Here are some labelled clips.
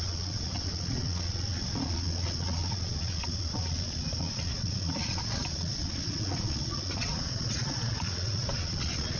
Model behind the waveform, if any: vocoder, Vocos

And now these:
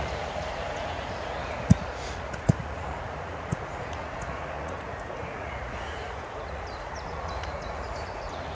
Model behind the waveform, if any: vocoder, Vocos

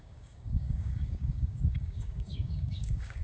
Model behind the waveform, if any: codec, DAC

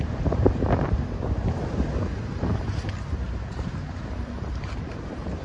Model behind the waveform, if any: vocoder, BigVGAN v2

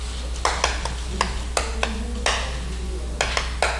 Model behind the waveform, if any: none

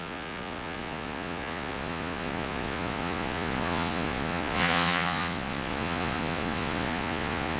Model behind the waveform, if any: vocoder, Vocos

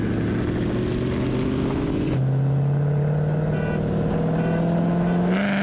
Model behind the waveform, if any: none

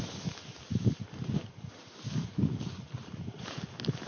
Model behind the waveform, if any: none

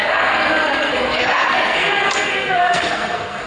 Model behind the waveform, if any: codec, SNAC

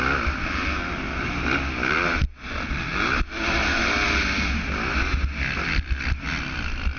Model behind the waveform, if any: none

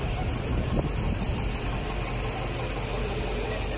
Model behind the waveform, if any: none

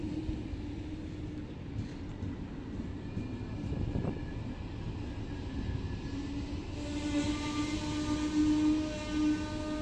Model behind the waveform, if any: none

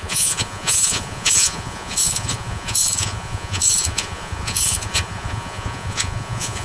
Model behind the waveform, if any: vocoder, Vocos